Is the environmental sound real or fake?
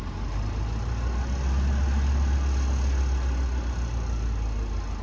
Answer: real